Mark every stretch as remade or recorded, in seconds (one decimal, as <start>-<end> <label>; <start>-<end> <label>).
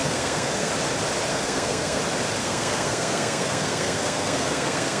0.0-0.7 remade; 0.7-1.3 recorded; 1.3-2.0 remade; 2.0-2.4 recorded; 2.4-5.0 remade